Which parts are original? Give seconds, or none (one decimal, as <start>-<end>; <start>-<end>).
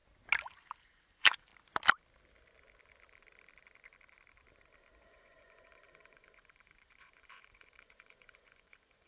0.0-0.8; 1.5-5.0